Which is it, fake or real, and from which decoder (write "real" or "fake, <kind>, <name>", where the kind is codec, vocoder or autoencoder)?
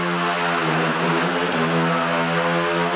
real